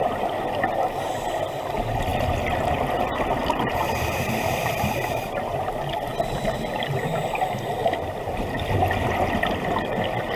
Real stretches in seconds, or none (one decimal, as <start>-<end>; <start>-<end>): 0.0-3.4; 5.6-7.8; 8.6-10.4